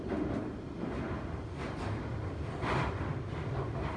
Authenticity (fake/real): real